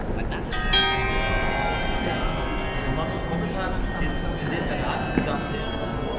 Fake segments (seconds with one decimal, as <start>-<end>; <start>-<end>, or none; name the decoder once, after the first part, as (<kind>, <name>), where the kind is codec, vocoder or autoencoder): 5.6-6.2 (codec, SNAC)